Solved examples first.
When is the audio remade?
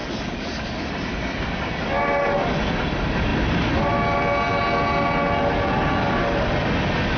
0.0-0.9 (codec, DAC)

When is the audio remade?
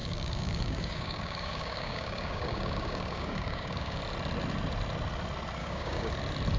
0.0-4.0 (codec, DAC); 5.6-6.1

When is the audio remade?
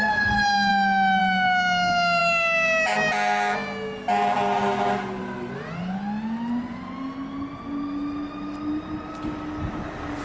none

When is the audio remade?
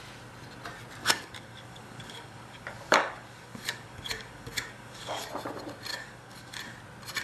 1.0-5.3 (codec, DAC); 5.9-6.6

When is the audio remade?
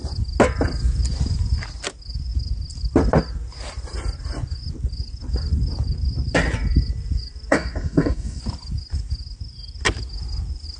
7.5-8.4 (codec, DAC)